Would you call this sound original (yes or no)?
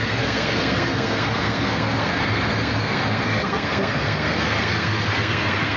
no